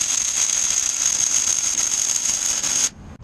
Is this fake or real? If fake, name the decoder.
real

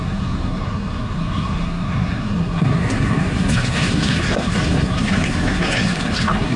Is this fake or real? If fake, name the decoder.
fake, codec, SNAC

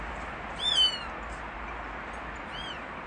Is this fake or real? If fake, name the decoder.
real